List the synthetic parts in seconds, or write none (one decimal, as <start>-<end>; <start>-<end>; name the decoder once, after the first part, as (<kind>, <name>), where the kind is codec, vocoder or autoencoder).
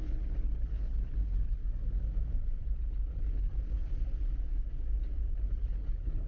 0.0-1.6 (codec, HILCodec); 3.1-3.5; 5.3-6.3